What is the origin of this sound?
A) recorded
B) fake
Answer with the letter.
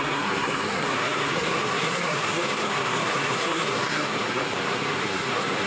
B